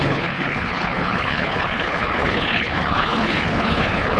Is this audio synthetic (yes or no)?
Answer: yes